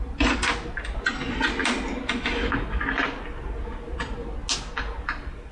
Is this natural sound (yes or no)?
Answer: yes